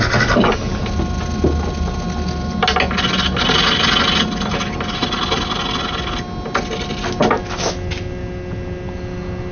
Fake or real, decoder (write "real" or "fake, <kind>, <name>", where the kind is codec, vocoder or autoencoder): real